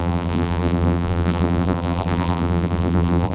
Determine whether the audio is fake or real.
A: fake